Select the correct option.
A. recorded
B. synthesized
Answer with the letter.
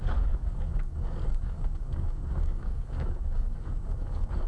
B